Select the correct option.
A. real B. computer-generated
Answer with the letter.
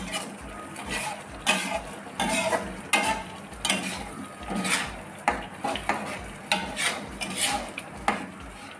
A